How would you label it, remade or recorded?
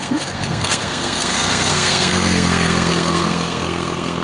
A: remade